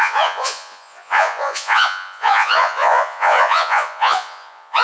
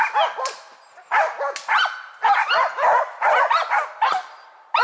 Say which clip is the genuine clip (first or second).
second